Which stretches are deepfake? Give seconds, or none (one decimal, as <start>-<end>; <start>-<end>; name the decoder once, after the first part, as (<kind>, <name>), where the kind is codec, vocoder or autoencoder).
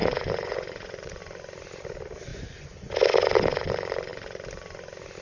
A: 0.0-1.2 (vocoder, Vocos); 2.3-2.9